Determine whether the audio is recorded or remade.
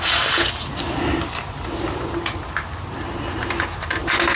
recorded